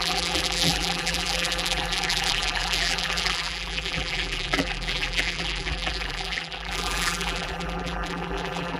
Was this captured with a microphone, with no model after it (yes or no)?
no